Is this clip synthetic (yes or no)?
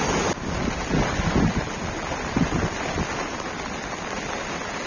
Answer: no